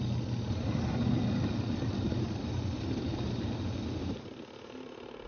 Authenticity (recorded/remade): recorded